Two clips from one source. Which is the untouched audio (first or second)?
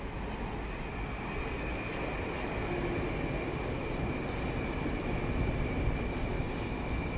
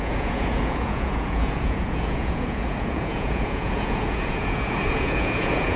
first